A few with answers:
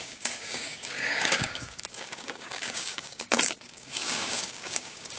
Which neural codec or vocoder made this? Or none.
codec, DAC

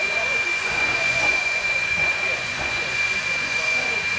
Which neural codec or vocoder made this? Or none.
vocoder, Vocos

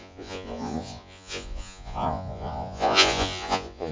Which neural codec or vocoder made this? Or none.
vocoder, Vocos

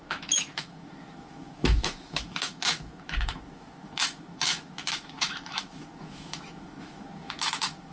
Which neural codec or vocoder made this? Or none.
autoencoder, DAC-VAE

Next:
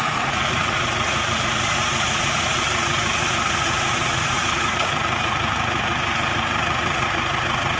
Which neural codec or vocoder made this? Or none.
vocoder, Vocos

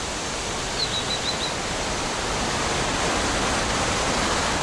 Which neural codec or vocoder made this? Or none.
none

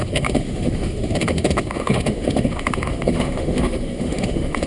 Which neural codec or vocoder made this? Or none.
autoencoder, DAC-VAE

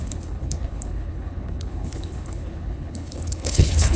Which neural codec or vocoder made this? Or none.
codec, HILCodec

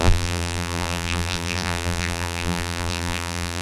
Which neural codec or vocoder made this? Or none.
vocoder, BigVGAN v2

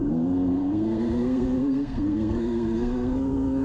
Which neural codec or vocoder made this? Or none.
codec, SNAC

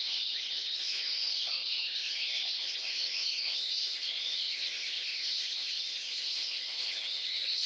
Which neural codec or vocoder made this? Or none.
codec, ZipCodec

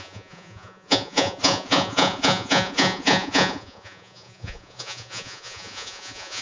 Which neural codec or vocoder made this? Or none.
vocoder, Vocos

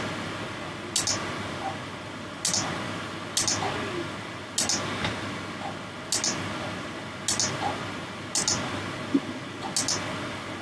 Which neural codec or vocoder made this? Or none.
none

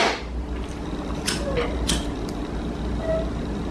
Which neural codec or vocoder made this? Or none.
none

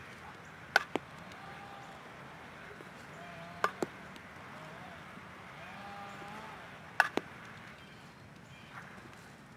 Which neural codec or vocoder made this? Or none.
none